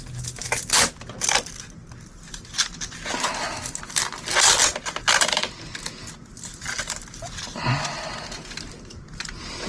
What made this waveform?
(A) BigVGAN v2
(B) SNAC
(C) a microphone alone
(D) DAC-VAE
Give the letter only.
C